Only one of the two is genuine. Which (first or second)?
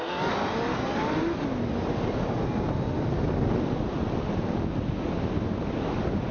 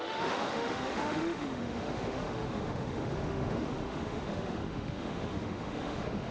first